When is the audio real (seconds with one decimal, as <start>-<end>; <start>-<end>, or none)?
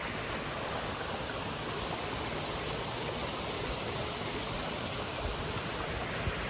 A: 1.1-3.2; 5.6-6.5